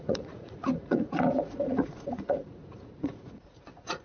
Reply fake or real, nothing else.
fake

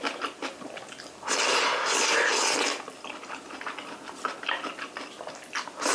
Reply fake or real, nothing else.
real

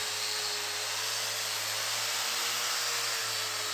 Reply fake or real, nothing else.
real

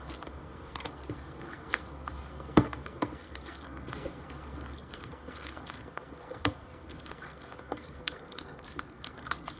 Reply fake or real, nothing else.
fake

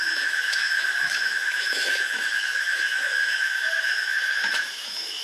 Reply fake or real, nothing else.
fake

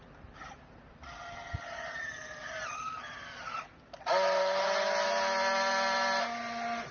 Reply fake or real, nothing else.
real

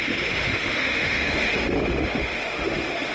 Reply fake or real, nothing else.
fake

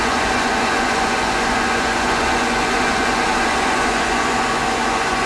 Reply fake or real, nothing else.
fake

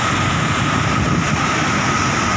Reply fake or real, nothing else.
real